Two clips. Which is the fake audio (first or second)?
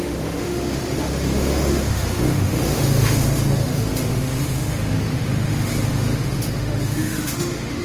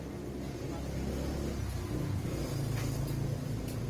first